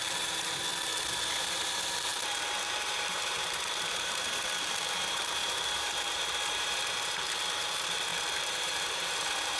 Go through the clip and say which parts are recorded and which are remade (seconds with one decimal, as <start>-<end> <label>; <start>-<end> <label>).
0.0-0.7 remade; 0.7-1.4 recorded; 1.4-9.6 remade